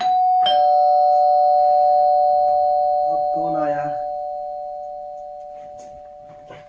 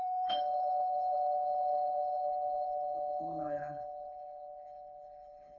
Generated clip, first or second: second